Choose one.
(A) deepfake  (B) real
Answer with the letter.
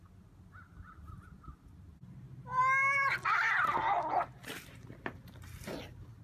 B